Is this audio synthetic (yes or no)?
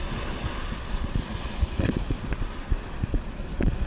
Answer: yes